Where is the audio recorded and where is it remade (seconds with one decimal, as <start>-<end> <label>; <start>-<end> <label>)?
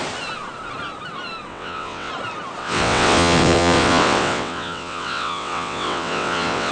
0.0-1.5 recorded; 1.5-2.1 remade; 2.1-2.6 recorded; 2.6-6.7 remade